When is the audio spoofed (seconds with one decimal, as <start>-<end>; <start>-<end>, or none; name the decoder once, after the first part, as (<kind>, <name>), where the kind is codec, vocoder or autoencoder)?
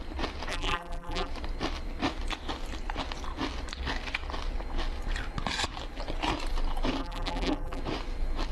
0.5-1.3 (vocoder, BigVGAN v2); 7.0-7.8